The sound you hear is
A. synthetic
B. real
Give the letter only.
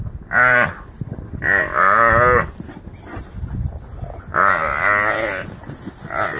B